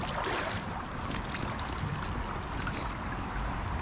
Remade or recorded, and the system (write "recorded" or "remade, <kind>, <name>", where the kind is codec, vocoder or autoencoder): recorded